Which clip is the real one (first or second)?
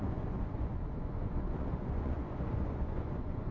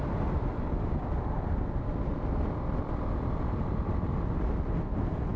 second